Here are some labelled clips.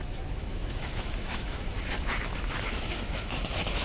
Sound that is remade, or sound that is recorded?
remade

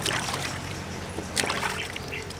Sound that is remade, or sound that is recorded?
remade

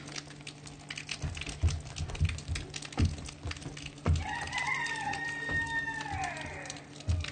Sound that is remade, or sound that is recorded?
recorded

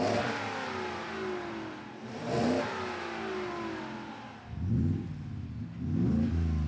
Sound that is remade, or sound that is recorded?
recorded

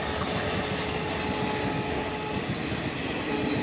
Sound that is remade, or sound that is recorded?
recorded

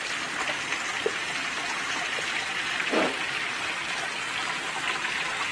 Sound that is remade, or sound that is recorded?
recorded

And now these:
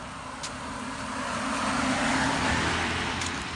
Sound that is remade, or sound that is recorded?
recorded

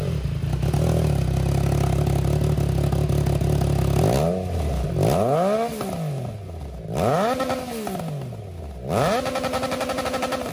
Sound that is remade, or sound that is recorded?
recorded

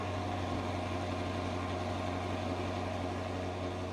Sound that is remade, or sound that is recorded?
recorded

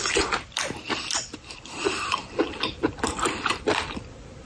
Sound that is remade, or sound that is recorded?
remade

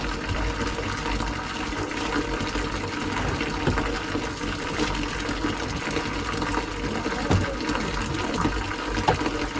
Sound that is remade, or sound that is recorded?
recorded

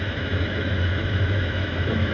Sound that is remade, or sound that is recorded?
remade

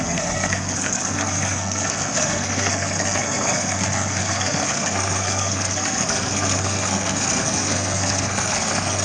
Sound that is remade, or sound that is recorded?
remade